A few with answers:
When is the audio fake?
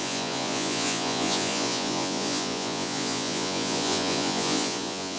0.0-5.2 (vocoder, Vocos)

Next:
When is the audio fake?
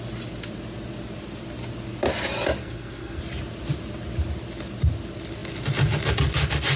2.6-3.2 (codec, SNAC)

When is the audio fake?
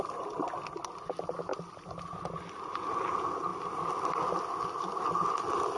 none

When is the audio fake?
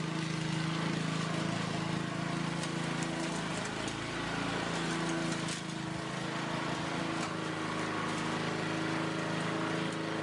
none